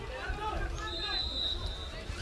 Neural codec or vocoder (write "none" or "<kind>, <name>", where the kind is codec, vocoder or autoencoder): none